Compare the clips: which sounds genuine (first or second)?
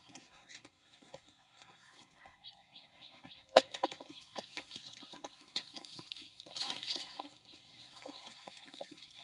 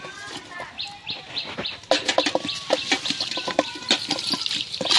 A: second